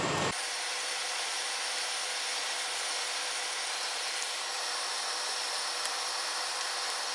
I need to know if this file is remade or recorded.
remade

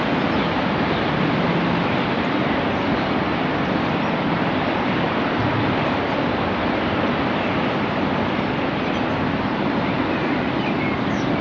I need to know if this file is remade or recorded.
recorded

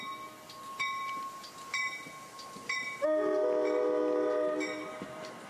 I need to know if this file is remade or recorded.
recorded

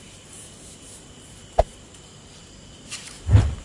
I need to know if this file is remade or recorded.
remade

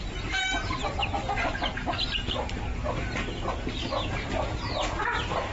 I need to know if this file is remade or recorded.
recorded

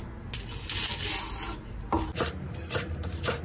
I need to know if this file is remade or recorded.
recorded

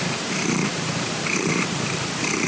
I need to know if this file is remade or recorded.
remade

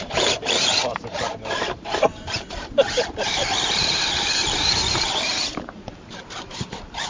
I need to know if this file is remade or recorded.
remade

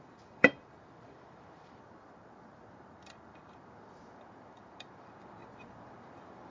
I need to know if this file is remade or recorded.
remade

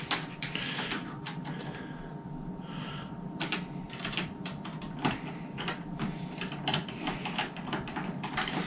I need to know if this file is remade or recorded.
recorded